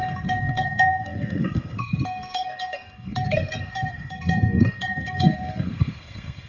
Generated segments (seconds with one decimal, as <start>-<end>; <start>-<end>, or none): 0.0-6.5